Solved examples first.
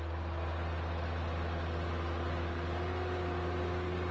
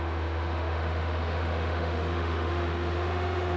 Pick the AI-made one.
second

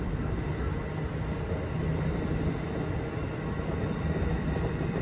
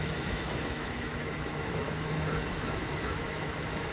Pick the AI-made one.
second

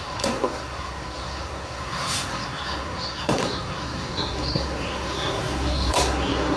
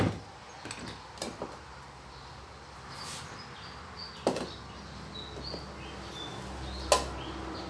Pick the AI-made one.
first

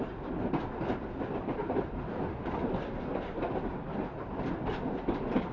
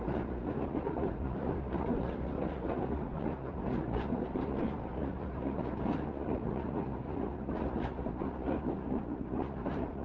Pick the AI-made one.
second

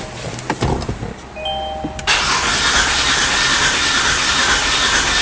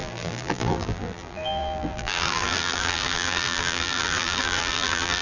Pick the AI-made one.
second